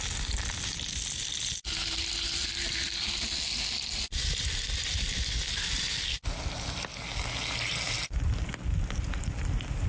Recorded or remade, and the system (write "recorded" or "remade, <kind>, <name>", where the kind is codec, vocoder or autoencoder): recorded